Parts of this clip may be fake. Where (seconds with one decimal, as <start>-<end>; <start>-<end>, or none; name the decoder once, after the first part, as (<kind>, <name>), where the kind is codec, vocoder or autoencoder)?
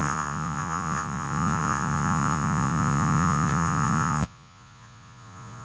0.0-5.6 (vocoder, Vocos)